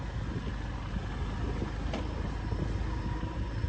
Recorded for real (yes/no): yes